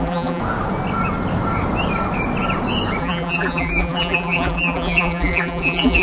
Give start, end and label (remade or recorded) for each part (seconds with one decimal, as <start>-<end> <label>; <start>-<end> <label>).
0.0-0.4 remade; 0.4-3.0 recorded; 3.0-6.0 remade